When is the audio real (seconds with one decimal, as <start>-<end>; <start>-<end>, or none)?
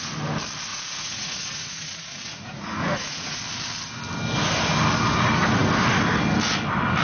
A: 0.0-0.7; 3.4-7.0